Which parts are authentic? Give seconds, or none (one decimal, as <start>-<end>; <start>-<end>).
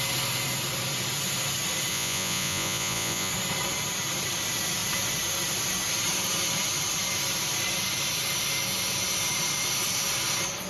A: 0.0-1.9; 3.3-10.7